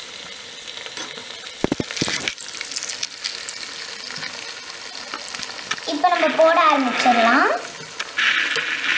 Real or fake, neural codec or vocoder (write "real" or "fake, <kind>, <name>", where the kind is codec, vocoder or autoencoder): real